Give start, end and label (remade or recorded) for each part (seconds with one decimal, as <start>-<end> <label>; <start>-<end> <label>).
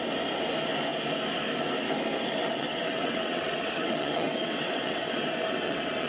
0.0-2.4 recorded; 2.4-6.1 remade